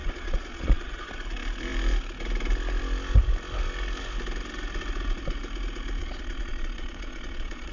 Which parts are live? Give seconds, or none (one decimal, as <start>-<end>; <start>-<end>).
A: 1.1-6.0